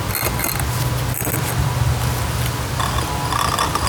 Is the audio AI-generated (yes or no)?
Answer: no